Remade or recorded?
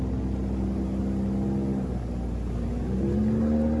recorded